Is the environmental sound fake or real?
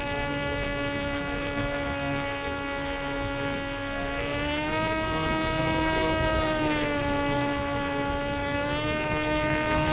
fake